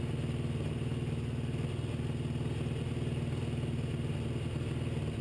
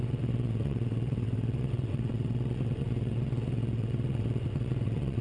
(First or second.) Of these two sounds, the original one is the first